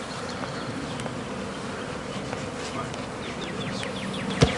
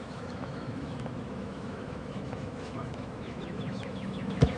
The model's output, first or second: second